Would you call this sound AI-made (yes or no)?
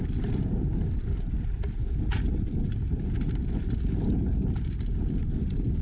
no